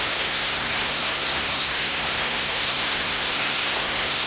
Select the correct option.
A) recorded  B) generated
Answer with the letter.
B